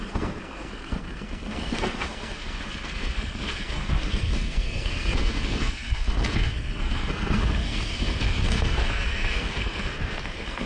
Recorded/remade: remade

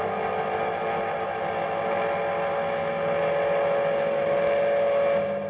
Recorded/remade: recorded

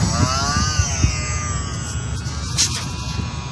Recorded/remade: recorded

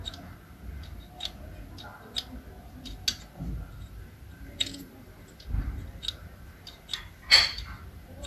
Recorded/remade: recorded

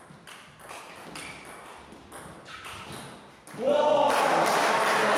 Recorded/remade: recorded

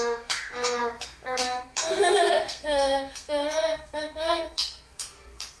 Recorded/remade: remade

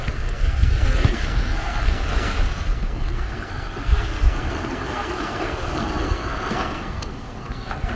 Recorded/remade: remade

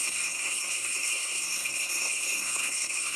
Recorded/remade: remade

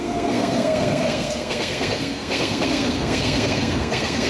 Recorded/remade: remade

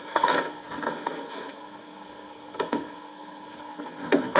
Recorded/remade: remade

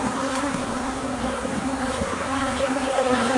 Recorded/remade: remade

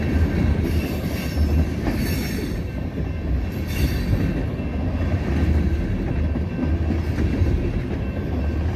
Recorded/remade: recorded